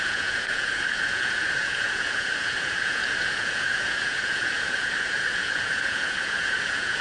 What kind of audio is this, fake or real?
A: fake